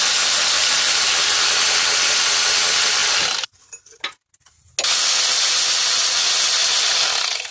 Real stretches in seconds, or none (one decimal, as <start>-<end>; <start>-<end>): 0.0-0.4; 1.1-7.5